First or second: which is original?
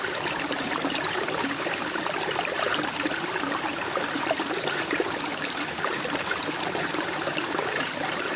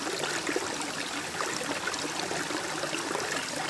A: second